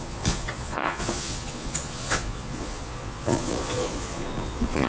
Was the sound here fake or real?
fake